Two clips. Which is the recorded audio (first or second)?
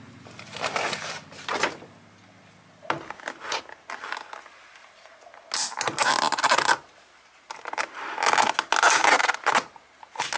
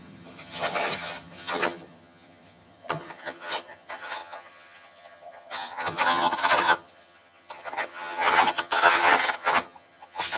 first